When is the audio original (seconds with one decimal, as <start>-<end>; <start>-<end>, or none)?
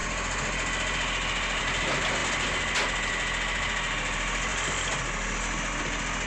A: 0.0-6.3